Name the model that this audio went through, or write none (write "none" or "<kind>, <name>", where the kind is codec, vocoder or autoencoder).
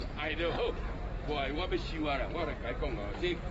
none